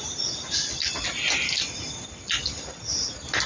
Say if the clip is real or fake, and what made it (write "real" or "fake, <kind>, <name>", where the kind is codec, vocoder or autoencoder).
real